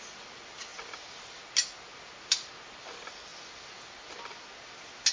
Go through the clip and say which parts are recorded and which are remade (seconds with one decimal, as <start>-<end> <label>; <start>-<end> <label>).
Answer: 0.0-5.1 recorded